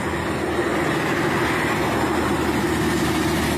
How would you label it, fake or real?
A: real